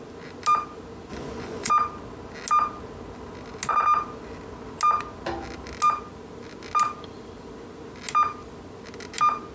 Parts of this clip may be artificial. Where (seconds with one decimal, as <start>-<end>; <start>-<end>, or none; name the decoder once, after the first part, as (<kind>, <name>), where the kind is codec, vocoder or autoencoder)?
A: 1.1-1.7 (vocoder, Vocos)